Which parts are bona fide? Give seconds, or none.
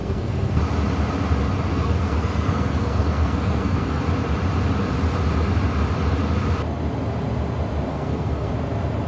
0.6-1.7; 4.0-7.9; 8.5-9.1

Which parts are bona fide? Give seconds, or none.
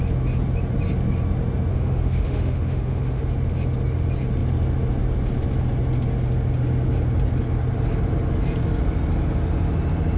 0.0-1.7; 3.2-10.2